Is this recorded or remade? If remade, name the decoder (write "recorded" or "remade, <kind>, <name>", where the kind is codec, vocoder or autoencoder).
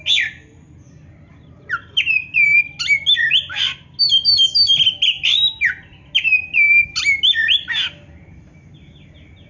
recorded